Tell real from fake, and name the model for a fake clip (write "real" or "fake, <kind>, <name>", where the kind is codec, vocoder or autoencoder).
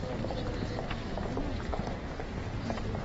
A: real